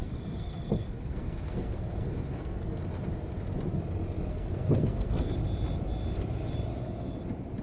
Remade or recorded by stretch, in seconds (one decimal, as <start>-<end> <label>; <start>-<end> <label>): 0.0-2.8 remade; 2.8-4.3 recorded; 4.3-5.3 remade; 5.3-7.6 recorded